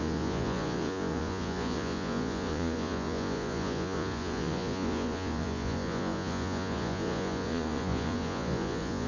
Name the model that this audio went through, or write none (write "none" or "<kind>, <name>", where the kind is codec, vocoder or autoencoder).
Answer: vocoder, Vocos